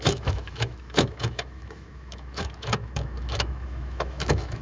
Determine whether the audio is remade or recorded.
remade